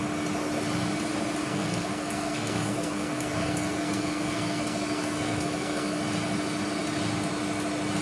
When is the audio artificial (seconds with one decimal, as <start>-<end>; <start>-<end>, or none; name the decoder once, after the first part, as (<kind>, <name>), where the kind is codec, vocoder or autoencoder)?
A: 1.4-6.0 (codec, SNAC)